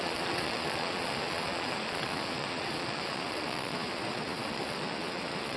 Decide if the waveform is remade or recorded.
remade